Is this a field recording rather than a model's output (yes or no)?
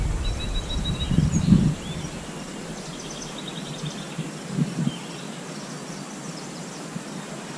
yes